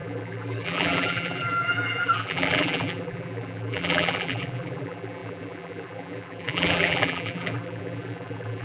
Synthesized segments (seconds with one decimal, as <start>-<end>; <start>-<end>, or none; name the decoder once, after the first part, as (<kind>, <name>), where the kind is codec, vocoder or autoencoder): 0.0-8.6 (vocoder, BigVGAN v2)